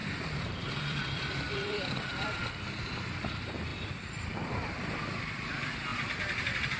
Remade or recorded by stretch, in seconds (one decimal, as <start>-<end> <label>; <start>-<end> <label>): 0.0-0.8 recorded; 0.8-6.8 remade